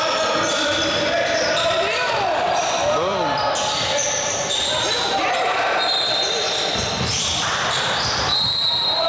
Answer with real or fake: fake